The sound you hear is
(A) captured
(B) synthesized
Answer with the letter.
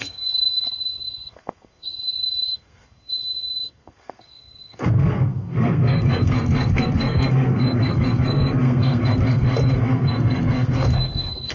B